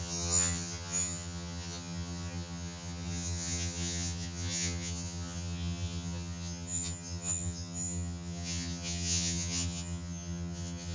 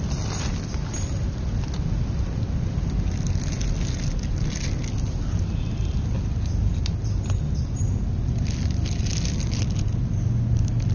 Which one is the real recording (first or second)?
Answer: second